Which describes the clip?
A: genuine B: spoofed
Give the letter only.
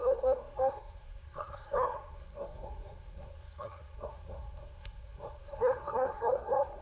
B